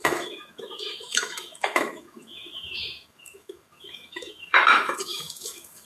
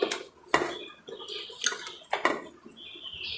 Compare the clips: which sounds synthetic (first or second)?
first